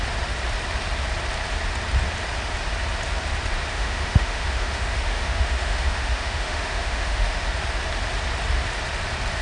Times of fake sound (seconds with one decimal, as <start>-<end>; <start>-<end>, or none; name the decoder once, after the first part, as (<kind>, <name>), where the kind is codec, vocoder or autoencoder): 3.7-7.5 (autoencoder, DAC-VAE)